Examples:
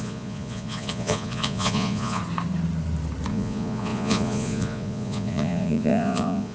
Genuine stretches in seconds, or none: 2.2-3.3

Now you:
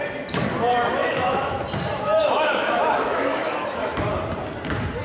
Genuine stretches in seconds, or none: 0.0-1.0; 1.6-2.2; 4.1-5.0